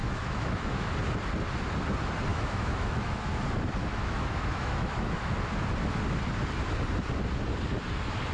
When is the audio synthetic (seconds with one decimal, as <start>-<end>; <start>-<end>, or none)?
0.0-0.9; 2.3-3.4; 3.8-5.3